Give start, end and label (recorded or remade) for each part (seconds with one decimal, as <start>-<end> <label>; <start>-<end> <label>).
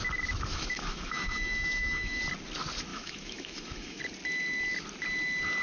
0.0-0.5 recorded; 0.5-2.2 remade; 2.2-2.9 recorded; 2.9-4.0 remade; 4.0-5.6 recorded